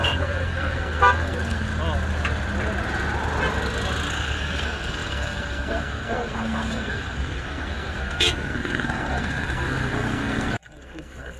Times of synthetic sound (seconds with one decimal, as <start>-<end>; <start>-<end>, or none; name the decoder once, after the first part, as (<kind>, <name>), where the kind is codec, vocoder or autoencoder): 0.0-1.7 (codec, SNAC); 4.1-11.4